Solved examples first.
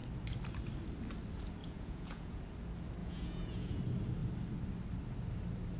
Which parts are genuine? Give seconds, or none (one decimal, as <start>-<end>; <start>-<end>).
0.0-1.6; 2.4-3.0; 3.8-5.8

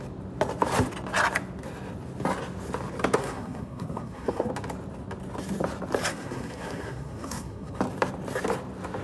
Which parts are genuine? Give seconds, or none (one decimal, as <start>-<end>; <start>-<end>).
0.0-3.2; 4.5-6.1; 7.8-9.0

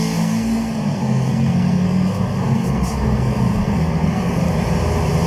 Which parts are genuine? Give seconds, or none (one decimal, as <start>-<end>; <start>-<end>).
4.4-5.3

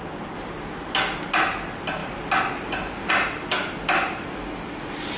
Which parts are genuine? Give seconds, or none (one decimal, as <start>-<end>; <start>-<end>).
0.0-5.2

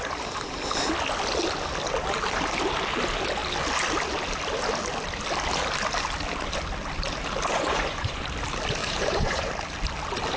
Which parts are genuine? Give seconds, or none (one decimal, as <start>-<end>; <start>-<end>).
0.0-7.5; 8.2-8.8; 9.5-10.4

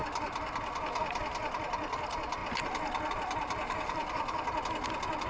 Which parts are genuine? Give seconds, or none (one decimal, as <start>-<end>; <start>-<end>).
0.0-5.3

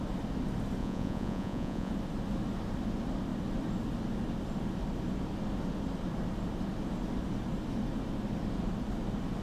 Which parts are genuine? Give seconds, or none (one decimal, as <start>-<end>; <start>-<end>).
0.0-0.8; 1.9-9.4

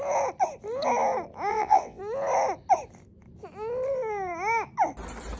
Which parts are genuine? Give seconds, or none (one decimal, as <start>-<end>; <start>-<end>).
0.0-1.5; 2.0-5.4